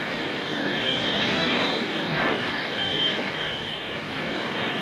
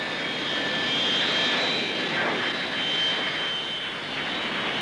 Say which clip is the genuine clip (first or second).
second